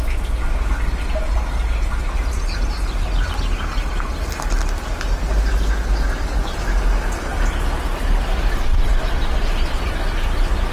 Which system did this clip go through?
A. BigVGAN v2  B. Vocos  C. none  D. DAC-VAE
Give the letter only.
C